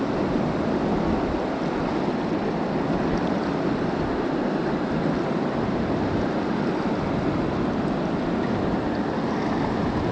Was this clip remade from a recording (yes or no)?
no